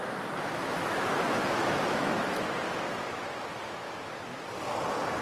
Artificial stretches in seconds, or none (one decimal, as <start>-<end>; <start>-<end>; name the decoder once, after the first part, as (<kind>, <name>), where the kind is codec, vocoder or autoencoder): 0.8-2.6 (autoencoder, DAC-VAE)